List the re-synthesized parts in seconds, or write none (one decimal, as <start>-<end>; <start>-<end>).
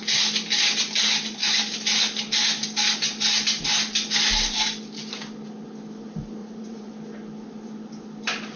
6.4-6.9